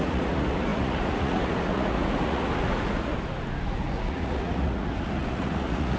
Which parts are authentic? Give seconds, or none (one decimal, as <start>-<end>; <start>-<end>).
3.1-3.7